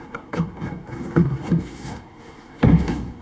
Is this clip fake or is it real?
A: fake